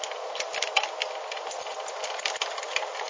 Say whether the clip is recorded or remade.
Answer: recorded